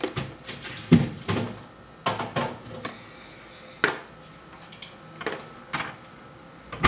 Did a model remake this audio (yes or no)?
no